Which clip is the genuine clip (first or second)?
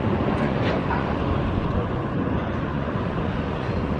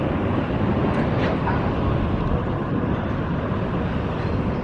second